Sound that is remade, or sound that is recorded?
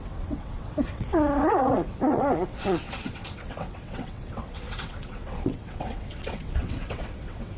remade